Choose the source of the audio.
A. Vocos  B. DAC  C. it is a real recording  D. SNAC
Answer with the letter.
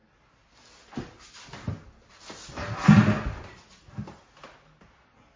C